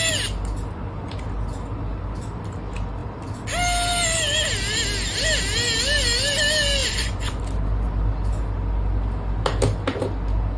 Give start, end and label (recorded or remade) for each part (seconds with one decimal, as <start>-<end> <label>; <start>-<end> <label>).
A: 0.0-6.8 recorded; 6.8-7.4 remade; 7.4-10.6 recorded